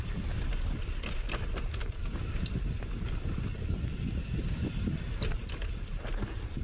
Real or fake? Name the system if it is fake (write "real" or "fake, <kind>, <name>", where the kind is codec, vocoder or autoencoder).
real